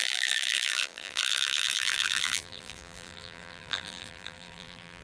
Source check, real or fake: fake